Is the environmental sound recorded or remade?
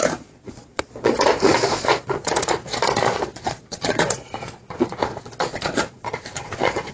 remade